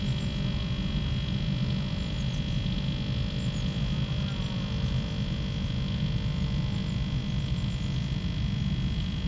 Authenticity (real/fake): real